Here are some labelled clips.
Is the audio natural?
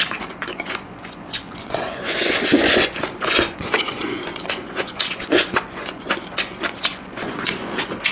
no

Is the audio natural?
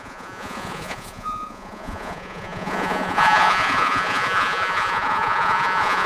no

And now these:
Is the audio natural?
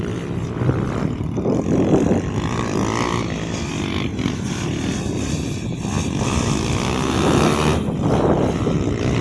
yes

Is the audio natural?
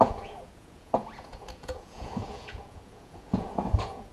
no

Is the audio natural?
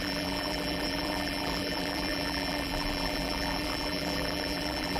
no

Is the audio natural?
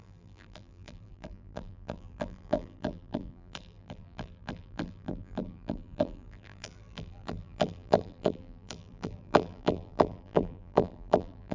no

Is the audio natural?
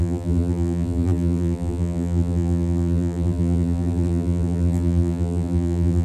no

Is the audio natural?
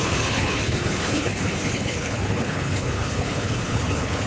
no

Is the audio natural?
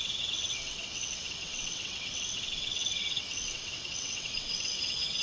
no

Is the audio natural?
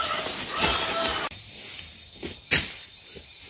yes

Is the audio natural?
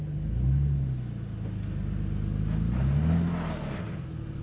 yes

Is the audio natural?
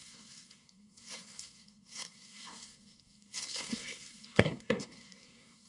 no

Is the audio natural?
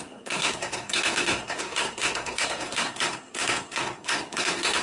no